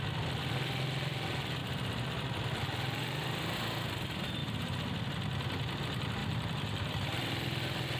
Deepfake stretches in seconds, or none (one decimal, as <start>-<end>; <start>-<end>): 6.2-6.9